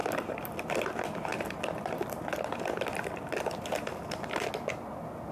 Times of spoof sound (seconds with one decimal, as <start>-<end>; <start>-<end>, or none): 0.0-5.3